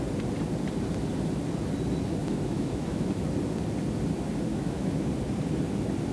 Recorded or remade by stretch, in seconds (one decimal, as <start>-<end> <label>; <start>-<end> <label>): 0.0-2.2 recorded; 2.2-3.1 remade; 3.1-4.5 recorded; 4.5-5.1 remade; 5.1-6.1 recorded